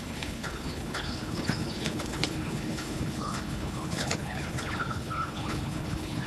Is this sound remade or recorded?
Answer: remade